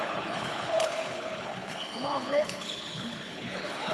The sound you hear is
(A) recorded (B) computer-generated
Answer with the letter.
B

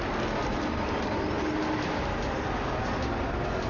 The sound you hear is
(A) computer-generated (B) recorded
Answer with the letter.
B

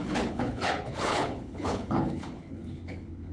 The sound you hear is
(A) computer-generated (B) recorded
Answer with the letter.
A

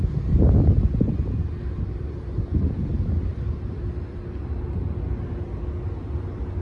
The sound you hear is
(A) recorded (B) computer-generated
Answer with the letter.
A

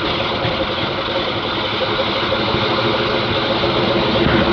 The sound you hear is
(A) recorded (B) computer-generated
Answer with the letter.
A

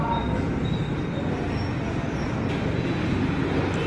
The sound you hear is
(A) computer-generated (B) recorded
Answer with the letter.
B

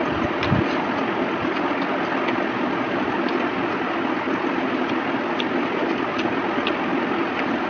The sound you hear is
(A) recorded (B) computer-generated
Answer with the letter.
A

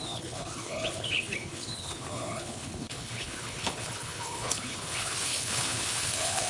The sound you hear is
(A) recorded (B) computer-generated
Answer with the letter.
B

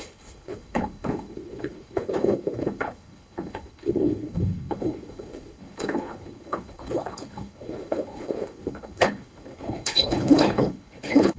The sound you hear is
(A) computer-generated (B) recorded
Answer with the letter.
A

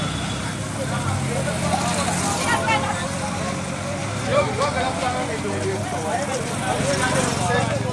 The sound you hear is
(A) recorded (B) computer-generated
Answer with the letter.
A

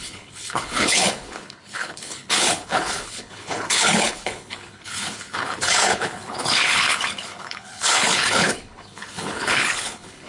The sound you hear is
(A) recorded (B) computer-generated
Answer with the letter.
B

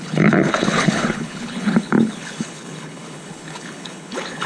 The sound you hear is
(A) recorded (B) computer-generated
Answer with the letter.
B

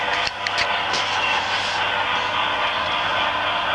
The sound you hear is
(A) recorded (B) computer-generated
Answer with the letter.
A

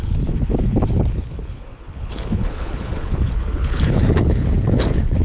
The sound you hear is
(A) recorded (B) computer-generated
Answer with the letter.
B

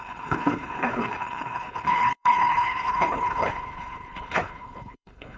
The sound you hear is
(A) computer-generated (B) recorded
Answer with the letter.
A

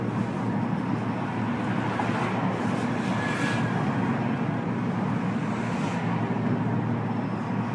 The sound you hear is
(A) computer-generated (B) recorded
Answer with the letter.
B